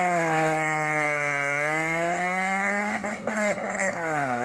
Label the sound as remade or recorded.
remade